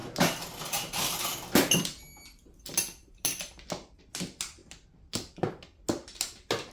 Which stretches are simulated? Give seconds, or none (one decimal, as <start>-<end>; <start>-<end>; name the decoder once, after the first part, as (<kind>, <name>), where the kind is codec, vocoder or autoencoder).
none